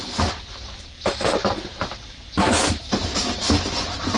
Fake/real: fake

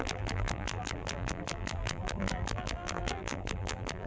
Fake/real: fake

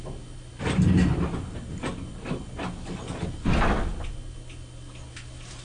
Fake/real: real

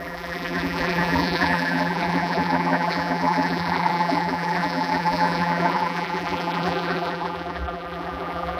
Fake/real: fake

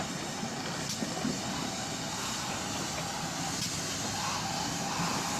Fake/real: real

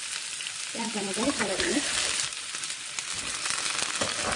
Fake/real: fake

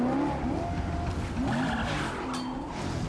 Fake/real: real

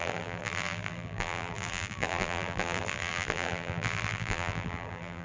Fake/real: fake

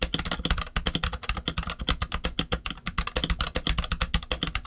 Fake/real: real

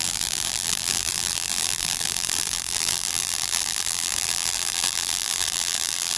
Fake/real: fake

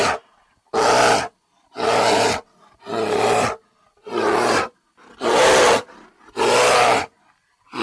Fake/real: real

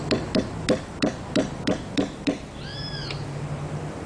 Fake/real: real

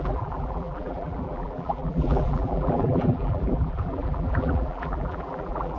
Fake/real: fake